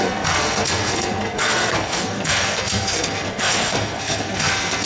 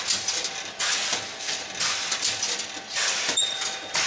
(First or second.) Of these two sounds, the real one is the second